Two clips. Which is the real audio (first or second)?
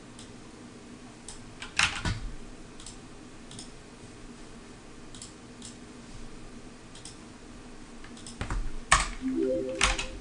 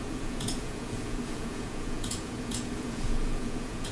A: first